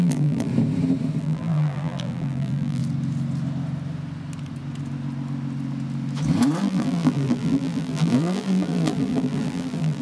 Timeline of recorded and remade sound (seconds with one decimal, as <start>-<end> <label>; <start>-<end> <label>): 0.0-0.5 remade; 0.5-1.2 recorded; 1.2-2.8 remade; 2.8-6.6 recorded; 6.6-10.0 remade